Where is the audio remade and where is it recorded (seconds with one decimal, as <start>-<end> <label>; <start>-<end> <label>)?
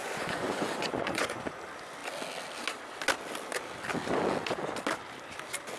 0.0-1.6 remade; 1.6-5.8 recorded